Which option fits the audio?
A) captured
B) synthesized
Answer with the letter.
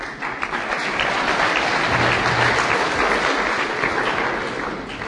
A